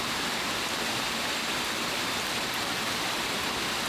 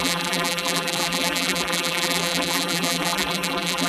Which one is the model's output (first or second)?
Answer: second